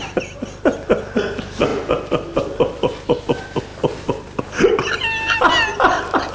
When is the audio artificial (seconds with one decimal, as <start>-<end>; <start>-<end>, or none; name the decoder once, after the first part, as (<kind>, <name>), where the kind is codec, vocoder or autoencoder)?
none